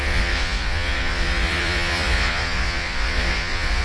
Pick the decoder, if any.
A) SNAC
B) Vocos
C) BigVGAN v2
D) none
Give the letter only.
B